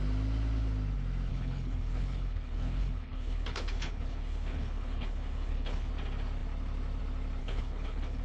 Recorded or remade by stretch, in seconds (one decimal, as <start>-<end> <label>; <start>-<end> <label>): 0.0-1.3 recorded; 1.3-5.9 remade; 5.9-7.4 recorded; 7.4-8.2 remade